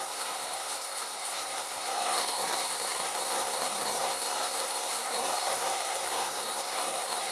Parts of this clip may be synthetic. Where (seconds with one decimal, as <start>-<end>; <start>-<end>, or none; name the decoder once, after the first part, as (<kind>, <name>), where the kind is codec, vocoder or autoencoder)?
0.0-7.3 (codec, SNAC)

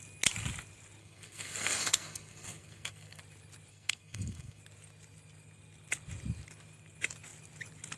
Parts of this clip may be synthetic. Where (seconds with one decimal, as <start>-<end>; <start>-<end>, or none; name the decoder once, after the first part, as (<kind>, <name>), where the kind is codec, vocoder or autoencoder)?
1.0-3.2 (codec, SNAC); 3.7-4.6

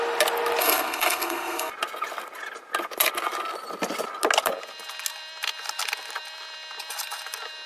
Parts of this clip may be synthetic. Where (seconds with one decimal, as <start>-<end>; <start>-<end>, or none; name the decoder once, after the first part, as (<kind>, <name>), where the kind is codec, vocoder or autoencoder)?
0.6-1.7 (codec, SNAC)